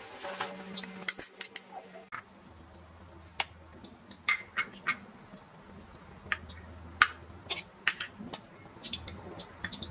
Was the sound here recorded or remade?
recorded